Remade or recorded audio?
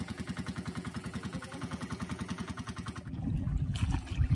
remade